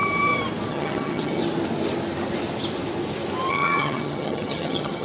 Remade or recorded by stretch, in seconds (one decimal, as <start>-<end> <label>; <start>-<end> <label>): 0.0-0.7 recorded; 0.7-1.4 remade; 1.4-3.5 recorded; 3.5-5.0 remade